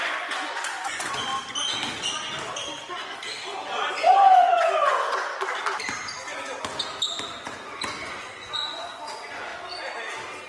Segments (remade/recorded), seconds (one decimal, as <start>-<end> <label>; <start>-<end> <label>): 0.0-1.3 remade; 1.3-3.9 recorded; 3.9-5.3 remade; 5.3-7.4 recorded; 7.4-9.5 remade; 9.5-10.5 recorded

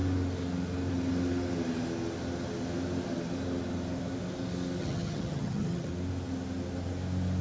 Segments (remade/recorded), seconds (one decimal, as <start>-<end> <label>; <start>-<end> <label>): 0.0-4.8 recorded; 4.8-5.9 remade; 5.9-7.4 recorded

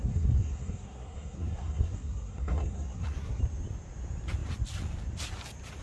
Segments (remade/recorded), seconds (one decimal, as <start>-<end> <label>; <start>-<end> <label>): 0.0-3.4 remade; 3.4-5.8 recorded

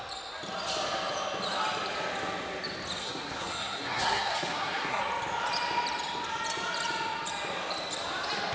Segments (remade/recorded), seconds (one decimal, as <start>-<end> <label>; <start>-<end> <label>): 0.0-3.0 recorded; 3.0-5.0 remade; 5.0-8.5 recorded

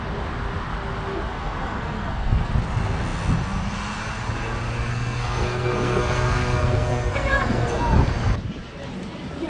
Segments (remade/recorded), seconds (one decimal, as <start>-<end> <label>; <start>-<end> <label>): 0.0-1.3 recorded; 1.3-2.5 remade; 2.5-4.8 recorded; 4.8-8.0 remade; 8.0-9.5 recorded

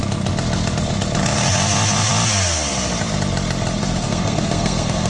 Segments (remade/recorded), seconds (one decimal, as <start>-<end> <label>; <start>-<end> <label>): 0.0-3.8 recorded; 3.8-5.1 remade